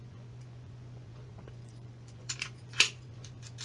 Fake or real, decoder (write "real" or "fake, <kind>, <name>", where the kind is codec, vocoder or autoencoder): fake, vocoder, Vocos